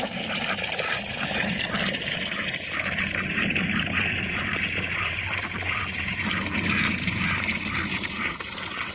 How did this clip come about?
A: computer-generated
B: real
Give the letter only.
A